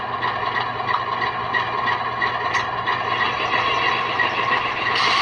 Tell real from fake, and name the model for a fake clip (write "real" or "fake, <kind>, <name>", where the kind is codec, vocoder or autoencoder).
real